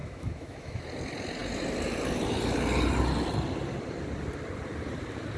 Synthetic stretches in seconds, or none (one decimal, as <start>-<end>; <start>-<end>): 0.0-0.8